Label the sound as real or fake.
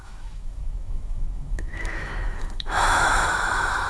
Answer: fake